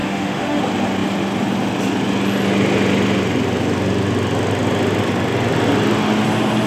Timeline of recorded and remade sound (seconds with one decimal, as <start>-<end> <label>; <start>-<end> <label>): 0.0-0.6 remade; 0.6-6.7 recorded